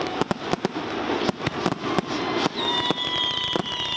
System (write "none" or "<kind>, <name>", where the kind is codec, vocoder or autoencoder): none